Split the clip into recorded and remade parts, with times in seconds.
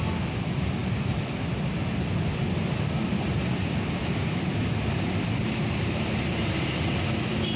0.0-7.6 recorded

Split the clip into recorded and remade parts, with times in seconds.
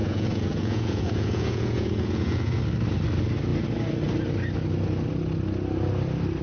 0.0-2.6 remade; 2.6-6.4 recorded